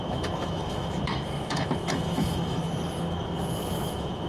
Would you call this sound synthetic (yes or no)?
yes